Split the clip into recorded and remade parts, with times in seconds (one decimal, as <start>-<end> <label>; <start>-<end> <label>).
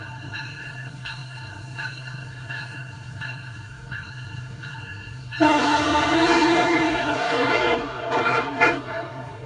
0.0-9.5 remade